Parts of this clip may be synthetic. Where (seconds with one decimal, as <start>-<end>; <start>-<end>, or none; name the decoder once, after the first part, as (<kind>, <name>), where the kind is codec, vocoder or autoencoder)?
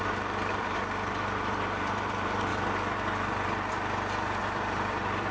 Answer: 0.0-2.5 (vocoder, BigVGAN v2); 4.4-5.3